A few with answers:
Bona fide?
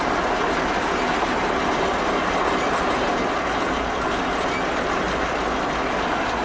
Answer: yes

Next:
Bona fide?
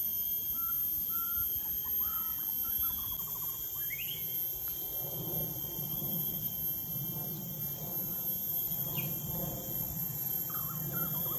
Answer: yes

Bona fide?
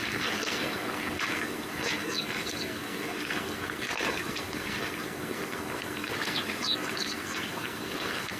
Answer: no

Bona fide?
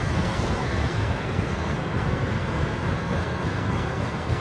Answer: no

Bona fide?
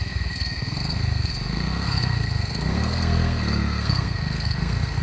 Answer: no